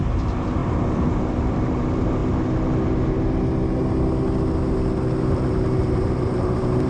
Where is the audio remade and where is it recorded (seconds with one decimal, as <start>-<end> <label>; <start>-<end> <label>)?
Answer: 0.0-2.2 remade; 2.2-5.2 recorded; 5.2-6.9 remade